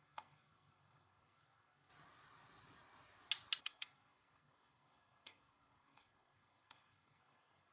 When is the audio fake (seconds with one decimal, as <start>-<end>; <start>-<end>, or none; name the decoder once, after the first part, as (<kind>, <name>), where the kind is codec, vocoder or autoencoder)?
0.0-1.9 (codec, SNAC); 3.6-7.7